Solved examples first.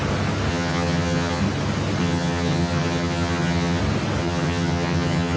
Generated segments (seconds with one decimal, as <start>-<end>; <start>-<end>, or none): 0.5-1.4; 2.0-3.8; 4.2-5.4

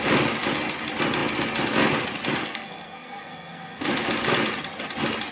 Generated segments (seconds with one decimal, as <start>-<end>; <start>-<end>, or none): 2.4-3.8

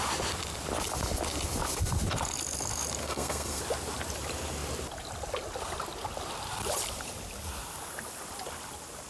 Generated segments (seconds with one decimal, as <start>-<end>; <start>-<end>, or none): 3.0-3.6